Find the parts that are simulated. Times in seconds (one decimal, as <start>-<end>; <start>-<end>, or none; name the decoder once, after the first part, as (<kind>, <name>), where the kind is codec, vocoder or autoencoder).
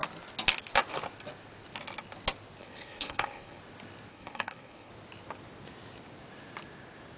2.6-3.6 (codec, HILCodec); 4.1-4.9